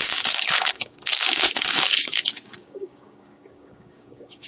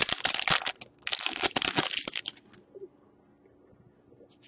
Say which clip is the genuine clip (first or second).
second